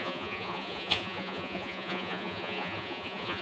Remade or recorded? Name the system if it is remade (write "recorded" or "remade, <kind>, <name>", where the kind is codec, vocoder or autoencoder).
remade, vocoder, Vocos